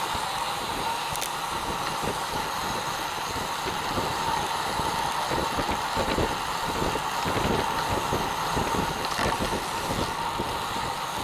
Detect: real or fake real